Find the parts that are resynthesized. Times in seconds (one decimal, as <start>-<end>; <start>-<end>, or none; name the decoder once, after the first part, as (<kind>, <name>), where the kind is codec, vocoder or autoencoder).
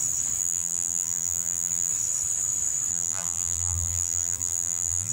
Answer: 0.4-1.9 (vocoder, BigVGAN v2); 2.9-5.1